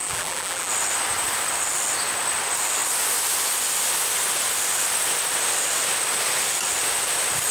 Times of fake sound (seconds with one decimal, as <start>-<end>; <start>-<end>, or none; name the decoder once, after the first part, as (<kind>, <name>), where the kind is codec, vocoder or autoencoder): 0.0-0.7 (vocoder, BigVGAN v2)